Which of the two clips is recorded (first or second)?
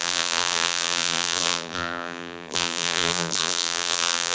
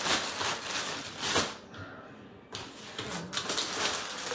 second